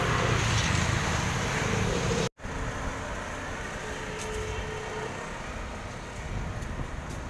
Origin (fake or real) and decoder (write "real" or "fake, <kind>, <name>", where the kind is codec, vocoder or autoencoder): real